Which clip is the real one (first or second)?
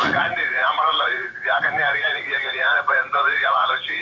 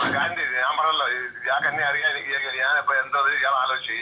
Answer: second